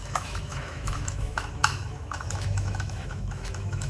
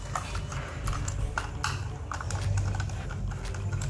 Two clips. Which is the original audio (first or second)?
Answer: second